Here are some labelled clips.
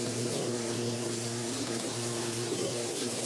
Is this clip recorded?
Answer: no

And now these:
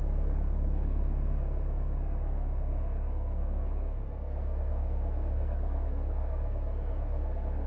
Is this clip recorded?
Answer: no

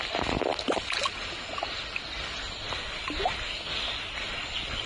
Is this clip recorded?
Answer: yes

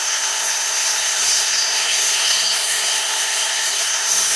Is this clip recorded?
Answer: no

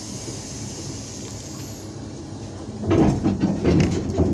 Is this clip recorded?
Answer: yes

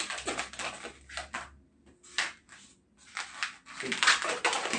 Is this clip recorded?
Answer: yes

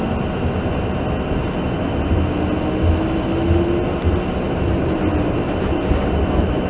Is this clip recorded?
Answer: yes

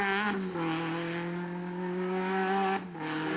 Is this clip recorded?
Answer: yes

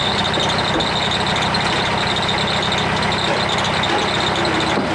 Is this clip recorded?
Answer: yes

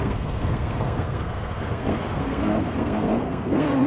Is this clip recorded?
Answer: no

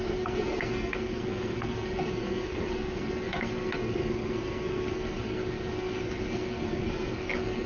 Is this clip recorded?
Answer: no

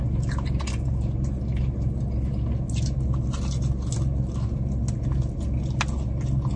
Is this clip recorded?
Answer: yes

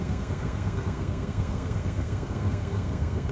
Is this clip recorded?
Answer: no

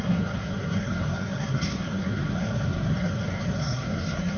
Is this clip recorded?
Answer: no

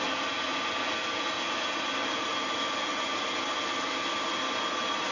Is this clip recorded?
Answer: yes